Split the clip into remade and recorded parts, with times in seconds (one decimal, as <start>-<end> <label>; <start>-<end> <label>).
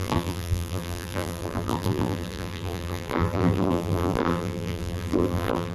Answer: 0.0-5.7 remade